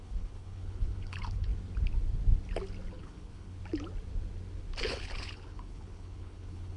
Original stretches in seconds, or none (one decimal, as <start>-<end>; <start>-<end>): 1.5-2.9; 3.6-4.8